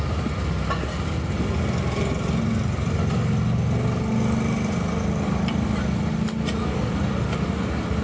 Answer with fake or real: real